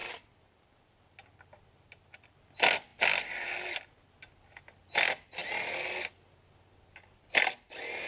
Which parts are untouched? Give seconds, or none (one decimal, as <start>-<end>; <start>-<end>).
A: 0.0-8.1